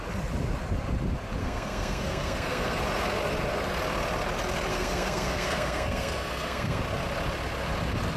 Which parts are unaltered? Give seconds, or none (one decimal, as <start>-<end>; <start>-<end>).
0.0-1.4; 2.8-4.7; 6.8-8.2